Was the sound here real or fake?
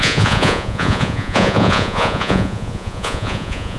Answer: fake